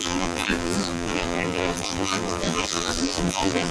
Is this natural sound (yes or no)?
no